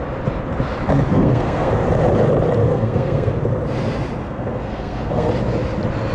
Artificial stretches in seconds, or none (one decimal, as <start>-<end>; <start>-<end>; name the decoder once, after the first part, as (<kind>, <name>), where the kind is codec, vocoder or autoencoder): 1.1-1.7 (codec, SNAC); 2.6-3.3; 4.2-5.3

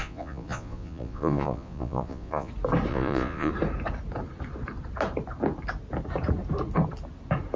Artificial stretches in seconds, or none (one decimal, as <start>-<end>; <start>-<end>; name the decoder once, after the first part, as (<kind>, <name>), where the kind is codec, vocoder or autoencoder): 0.0-2.5 (vocoder, Vocos); 2.9-3.5

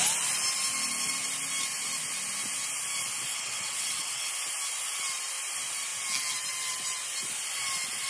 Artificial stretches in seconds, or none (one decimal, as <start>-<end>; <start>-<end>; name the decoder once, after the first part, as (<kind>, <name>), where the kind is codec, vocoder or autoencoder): 3.3-4.3 (vocoder, WaveNeXt)

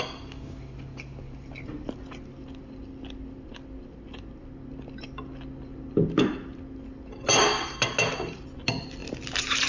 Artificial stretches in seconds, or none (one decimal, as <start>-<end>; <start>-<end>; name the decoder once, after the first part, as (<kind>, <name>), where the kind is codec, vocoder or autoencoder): none

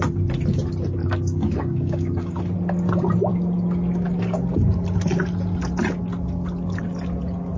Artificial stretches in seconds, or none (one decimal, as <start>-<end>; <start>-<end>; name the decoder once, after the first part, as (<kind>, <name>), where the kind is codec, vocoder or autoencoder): 1.0-2.4 (codec, DAC)

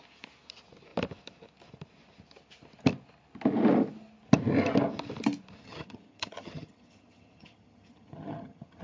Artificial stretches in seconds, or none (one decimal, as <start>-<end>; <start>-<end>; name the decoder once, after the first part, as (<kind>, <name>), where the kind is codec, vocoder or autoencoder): 5.6-8.8 (vocoder, HiFi-GAN)

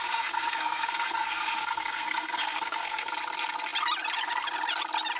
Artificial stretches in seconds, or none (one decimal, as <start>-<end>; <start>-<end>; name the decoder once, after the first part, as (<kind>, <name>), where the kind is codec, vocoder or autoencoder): 0.0-3.1 (codec, SNAC)

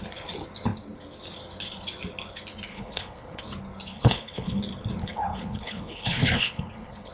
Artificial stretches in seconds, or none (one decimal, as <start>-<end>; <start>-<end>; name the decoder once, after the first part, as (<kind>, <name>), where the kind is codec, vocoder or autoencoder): 2.7-3.4 (codec, HILCodec); 3.9-4.6; 5.0-7.1